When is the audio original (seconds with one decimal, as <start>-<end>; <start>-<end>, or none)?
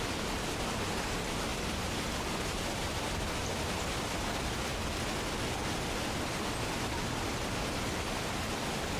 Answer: 0.0-1.5; 3.7-9.0